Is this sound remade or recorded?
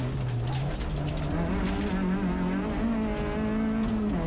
recorded